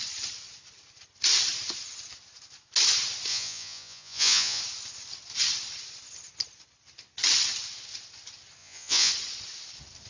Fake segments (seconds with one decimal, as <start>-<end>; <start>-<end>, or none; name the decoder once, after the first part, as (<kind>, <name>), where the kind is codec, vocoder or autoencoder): 3.3-4.6 (vocoder, Vocos); 8.6-9.1